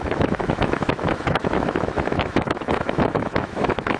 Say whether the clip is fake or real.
fake